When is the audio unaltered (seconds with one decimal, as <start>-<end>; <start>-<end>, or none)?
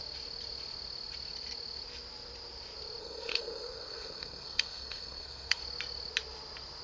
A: 0.0-3.0; 5.6-6.8